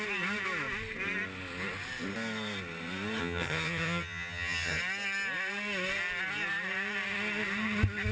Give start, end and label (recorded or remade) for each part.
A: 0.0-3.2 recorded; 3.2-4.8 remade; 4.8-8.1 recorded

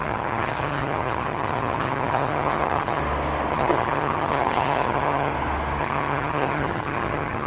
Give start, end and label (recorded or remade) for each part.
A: 0.0-3.0 remade; 3.0-3.5 recorded; 3.5-5.3 remade; 5.3-5.8 recorded; 5.8-7.5 remade